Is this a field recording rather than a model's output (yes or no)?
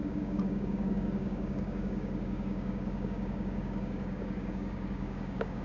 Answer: no